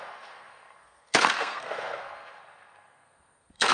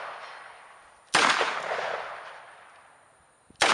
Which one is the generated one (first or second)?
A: first